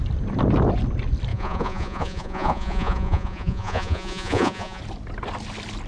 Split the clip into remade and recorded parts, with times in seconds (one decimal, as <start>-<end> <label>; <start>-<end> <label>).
0.0-1.3 recorded; 1.3-4.8 remade; 4.8-5.9 recorded